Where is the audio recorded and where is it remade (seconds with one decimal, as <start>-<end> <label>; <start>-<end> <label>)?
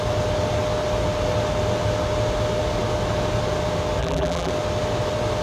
0.0-4.0 recorded; 4.0-4.5 remade; 4.5-5.4 recorded